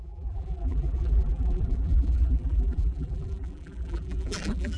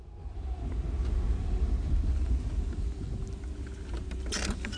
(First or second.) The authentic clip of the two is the second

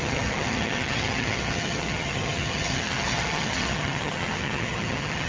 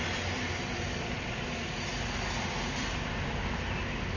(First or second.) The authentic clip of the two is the second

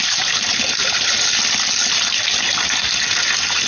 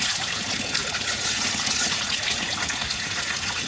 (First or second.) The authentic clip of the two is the first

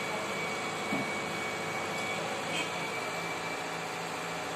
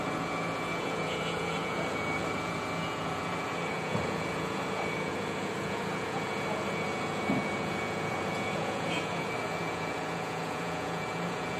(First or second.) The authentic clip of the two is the first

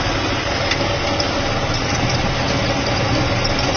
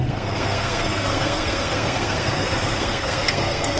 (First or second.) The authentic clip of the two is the first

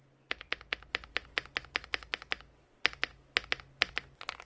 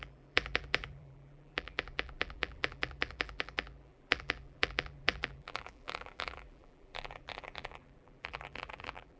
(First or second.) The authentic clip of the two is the first